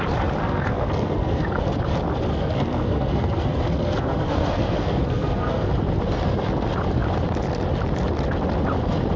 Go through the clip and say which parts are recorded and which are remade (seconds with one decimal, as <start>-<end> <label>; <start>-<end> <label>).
0.0-0.4 recorded; 0.4-1.6 remade; 1.6-2.3 recorded; 2.3-5.7 remade; 5.7-9.2 recorded